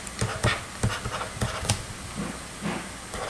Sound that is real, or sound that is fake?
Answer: real